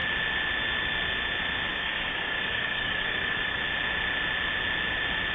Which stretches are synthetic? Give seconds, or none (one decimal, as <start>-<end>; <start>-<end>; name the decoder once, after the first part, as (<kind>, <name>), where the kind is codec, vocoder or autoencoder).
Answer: 1.7-3.6 (codec, DAC)